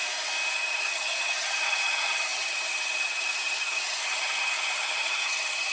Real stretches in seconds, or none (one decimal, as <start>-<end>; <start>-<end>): 0.0-0.5

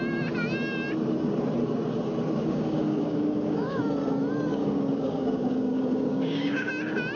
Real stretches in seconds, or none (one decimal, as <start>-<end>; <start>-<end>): 0.0-2.4; 3.8-4.5; 6.7-7.2